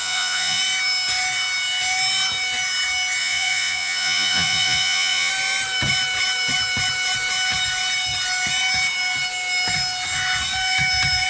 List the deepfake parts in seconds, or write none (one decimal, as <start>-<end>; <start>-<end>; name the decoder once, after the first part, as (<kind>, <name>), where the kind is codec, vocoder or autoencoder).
0.0-0.6 (vocoder, Vocos); 3.2-5.3